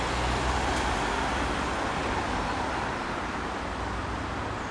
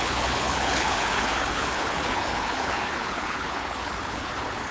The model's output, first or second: second